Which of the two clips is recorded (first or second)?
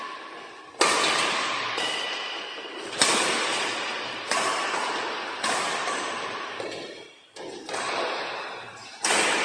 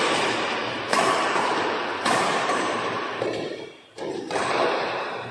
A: first